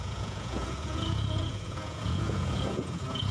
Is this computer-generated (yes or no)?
yes